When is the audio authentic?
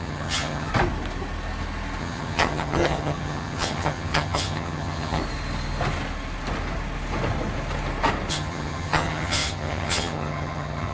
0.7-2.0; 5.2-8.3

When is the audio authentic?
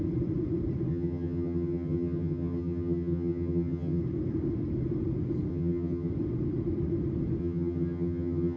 0.0-0.9; 4.0-5.5; 6.1-7.4